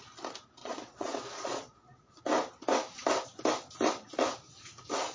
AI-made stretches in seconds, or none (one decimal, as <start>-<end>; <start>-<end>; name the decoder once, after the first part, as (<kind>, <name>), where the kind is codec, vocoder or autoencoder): 0.6-2.2 (vocoder, Vocos)